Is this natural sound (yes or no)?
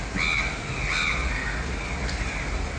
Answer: yes